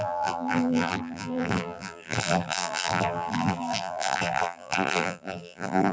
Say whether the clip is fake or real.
fake